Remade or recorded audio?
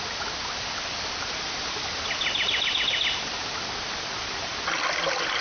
recorded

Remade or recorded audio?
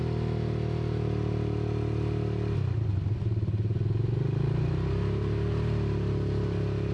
recorded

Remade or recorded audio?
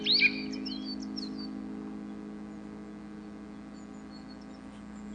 recorded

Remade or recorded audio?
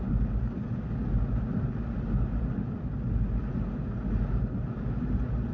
recorded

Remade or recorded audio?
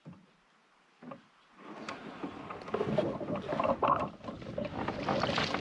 recorded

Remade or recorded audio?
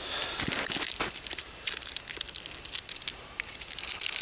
recorded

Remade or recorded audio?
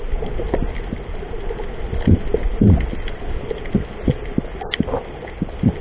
recorded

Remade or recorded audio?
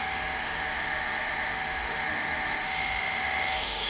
remade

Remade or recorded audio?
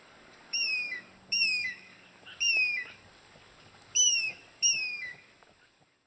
remade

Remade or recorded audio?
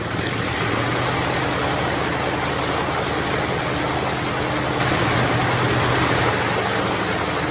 recorded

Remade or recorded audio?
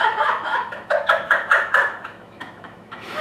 remade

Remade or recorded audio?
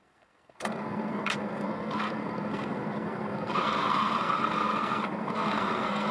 remade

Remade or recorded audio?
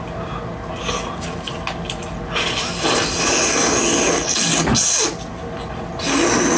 recorded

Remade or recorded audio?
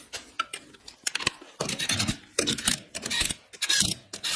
recorded